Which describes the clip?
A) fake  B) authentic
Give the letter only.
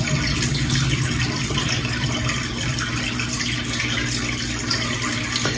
B